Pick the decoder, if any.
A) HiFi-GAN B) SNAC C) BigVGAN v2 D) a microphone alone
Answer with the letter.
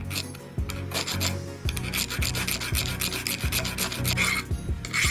D